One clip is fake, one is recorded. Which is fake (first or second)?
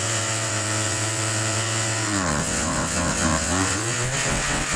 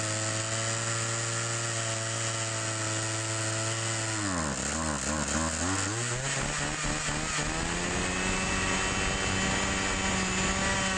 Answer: first